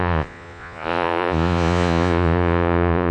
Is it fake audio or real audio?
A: fake